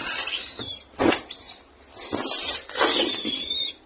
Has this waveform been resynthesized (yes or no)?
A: no